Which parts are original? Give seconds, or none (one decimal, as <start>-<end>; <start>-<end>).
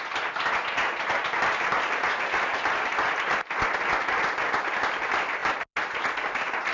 0.0-1.7; 2.6-6.7